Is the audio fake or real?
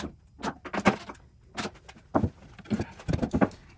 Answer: real